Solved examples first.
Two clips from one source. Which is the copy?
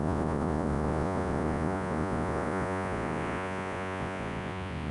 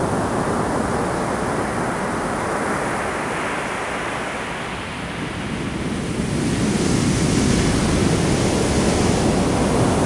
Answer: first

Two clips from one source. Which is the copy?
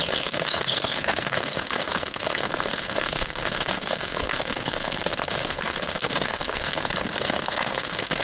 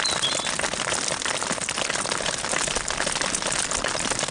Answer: first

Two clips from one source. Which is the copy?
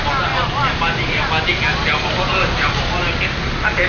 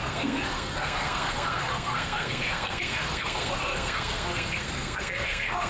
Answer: second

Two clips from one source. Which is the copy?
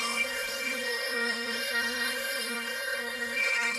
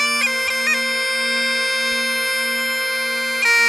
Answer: first